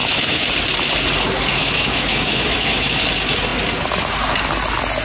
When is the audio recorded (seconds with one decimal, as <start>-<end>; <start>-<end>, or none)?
0.5-1.6; 3.0-5.0